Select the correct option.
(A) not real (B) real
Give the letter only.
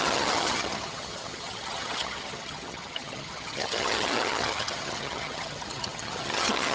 A